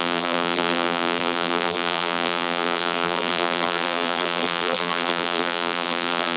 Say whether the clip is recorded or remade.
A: remade